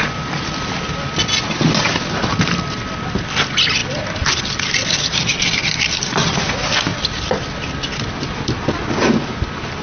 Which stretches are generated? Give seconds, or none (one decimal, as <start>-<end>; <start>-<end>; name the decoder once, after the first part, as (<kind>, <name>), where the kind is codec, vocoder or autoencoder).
none